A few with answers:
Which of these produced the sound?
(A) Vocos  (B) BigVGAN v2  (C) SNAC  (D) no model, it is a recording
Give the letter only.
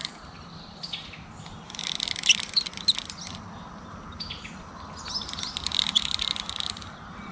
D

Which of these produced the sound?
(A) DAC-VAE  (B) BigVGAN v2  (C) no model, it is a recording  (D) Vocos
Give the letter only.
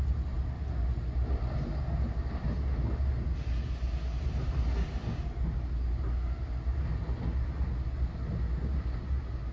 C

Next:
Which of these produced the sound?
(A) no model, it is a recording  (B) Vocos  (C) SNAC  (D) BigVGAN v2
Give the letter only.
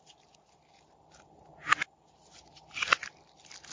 D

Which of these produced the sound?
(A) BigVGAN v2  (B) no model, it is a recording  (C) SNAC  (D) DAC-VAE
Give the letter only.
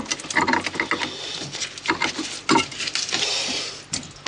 B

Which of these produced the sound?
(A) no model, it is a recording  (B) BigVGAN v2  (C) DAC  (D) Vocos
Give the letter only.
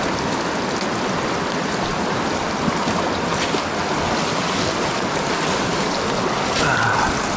A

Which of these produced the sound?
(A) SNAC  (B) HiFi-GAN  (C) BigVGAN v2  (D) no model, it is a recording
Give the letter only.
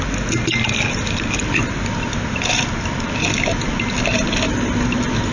D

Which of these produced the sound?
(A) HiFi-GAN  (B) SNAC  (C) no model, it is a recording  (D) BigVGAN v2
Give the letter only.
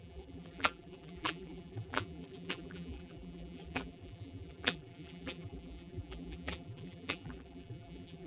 D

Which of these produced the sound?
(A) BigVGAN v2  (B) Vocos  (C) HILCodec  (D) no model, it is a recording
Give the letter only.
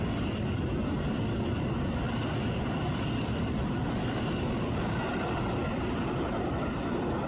D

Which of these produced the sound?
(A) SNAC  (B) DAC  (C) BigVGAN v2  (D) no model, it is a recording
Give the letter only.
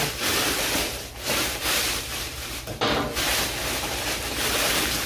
C